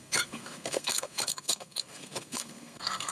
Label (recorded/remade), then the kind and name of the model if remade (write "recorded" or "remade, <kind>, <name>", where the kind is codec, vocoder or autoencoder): remade, codec, SNAC